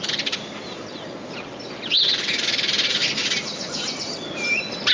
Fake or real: real